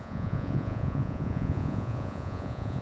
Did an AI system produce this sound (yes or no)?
yes